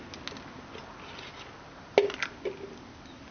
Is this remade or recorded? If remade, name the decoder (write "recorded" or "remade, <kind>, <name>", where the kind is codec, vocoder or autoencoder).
recorded